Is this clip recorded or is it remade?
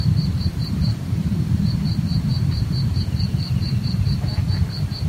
remade